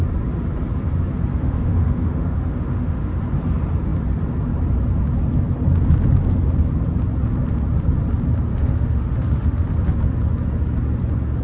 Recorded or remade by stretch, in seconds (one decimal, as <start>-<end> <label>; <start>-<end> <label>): 0.0-1.3 recorded; 1.3-3.2 remade; 3.2-8.5 recorded; 8.5-9.7 remade; 9.7-11.4 recorded